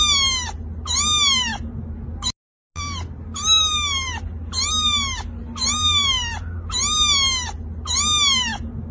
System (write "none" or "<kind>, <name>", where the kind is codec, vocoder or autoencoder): none